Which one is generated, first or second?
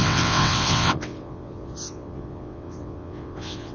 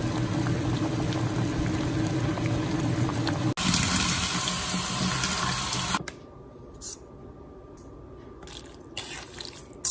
first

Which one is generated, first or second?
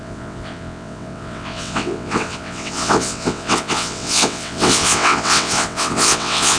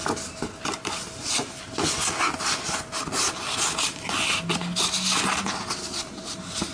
first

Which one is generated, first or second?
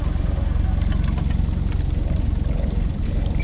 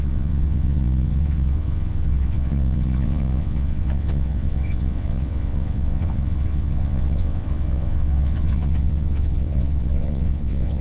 second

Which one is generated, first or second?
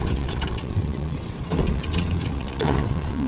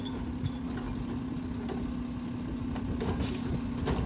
first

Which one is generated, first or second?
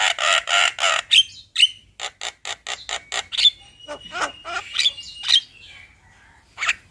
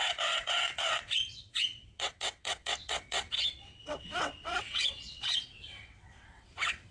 second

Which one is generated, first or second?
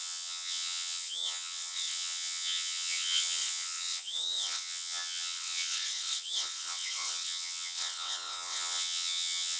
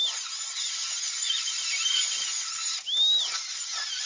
first